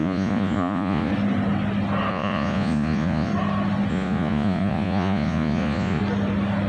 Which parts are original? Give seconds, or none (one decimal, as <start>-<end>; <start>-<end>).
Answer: 1.1-2.1; 3.3-3.9; 6.0-6.7